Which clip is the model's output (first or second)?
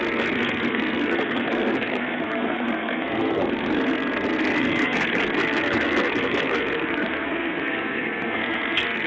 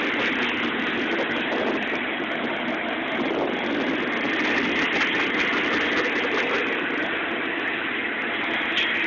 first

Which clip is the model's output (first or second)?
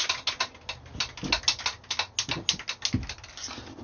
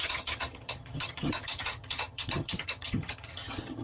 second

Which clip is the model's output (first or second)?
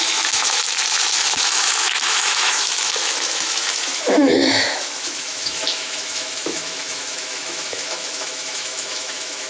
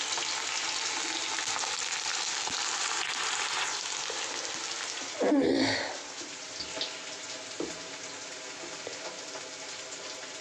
first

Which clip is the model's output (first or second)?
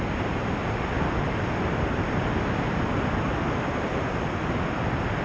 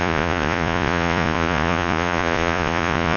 second